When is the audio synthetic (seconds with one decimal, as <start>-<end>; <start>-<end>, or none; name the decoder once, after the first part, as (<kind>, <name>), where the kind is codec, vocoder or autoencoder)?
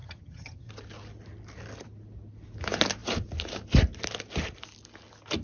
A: 0.0-0.7 (vocoder, HiFi-GAN)